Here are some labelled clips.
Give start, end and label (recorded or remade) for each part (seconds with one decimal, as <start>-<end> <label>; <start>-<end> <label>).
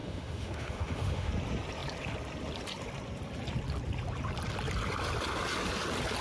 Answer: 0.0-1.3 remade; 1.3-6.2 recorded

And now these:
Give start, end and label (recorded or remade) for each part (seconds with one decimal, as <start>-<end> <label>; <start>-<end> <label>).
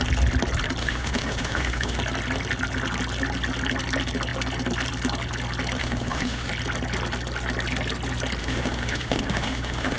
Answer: 0.0-0.8 recorded; 0.8-2.0 remade; 2.0-5.8 recorded; 5.8-6.5 remade; 6.5-8.4 recorded; 8.4-10.0 remade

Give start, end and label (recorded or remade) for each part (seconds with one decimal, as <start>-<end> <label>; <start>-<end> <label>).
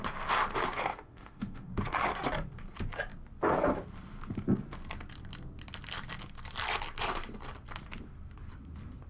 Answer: 0.0-0.9 recorded; 0.9-1.7 remade; 1.7-9.1 recorded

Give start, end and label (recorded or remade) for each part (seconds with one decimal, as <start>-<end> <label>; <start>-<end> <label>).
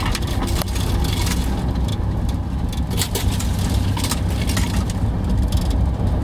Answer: 0.0-6.2 recorded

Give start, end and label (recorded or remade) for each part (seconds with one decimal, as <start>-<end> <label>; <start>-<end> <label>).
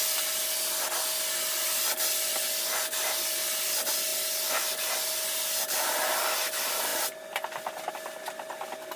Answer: 0.0-9.0 recorded